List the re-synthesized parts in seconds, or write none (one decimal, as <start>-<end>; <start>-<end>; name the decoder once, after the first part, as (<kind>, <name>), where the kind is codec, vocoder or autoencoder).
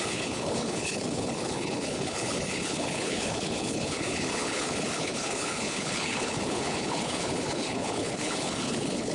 0.0-9.1 (codec, HILCodec)